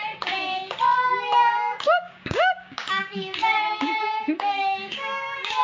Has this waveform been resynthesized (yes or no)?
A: yes